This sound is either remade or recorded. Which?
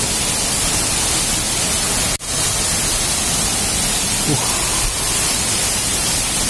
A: recorded